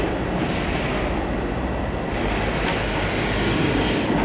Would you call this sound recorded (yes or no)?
yes